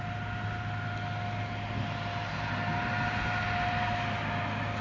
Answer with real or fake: real